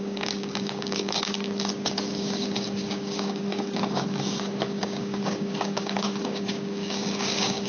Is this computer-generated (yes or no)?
yes